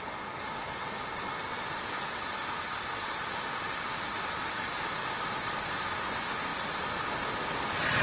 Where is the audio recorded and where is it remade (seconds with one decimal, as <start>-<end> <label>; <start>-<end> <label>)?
0.0-8.0 recorded